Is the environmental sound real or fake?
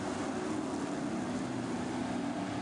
real